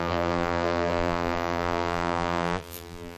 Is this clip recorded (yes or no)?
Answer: no